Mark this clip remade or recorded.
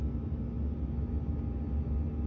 recorded